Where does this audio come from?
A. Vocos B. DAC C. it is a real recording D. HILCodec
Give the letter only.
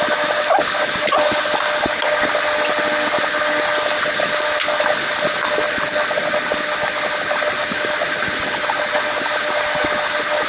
C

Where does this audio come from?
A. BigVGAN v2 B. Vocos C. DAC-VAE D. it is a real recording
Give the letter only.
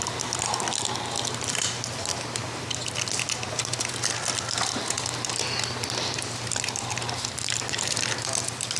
D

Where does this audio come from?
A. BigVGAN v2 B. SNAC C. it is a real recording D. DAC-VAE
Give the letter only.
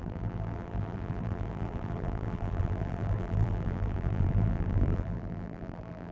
A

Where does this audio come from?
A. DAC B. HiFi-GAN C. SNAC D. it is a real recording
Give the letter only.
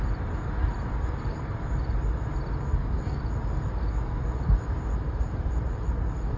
D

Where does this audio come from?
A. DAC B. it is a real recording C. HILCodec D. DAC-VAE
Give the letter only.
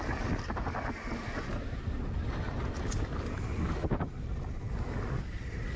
B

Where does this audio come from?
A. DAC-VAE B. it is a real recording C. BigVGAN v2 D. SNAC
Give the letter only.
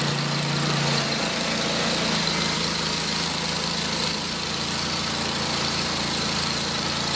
C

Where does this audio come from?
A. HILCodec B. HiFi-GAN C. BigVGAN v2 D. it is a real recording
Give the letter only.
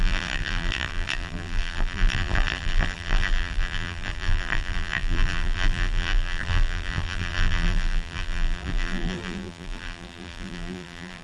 C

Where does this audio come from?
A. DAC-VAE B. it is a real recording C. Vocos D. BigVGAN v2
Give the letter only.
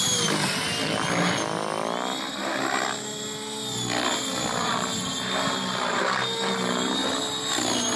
B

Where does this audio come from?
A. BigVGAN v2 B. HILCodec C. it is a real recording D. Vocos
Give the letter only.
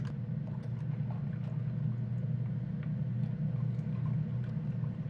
C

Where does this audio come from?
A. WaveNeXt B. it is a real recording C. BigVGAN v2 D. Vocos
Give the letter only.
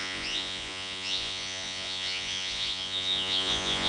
D